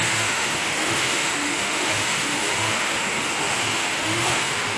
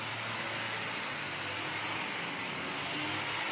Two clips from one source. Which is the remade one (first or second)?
first